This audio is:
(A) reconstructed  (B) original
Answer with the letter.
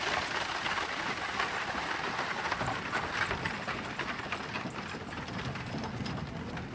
B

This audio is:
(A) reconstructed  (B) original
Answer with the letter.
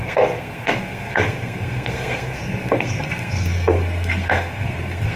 A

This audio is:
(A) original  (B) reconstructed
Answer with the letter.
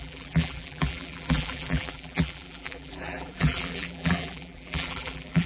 B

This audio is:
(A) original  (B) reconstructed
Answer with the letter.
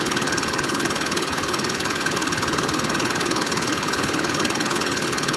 B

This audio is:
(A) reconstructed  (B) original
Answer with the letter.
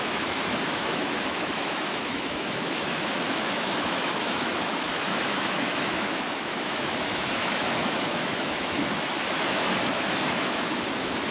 A